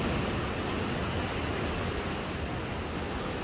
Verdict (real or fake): real